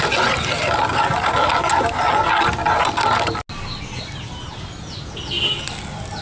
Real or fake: real